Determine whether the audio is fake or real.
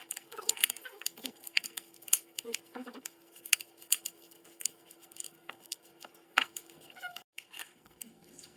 fake